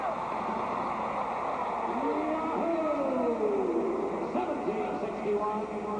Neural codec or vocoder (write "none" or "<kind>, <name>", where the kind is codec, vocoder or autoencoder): none